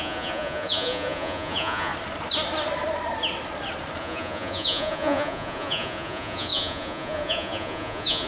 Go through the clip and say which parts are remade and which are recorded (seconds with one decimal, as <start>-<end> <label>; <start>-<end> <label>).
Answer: 0.0-1.9 remade; 1.9-4.0 recorded; 4.0-8.3 remade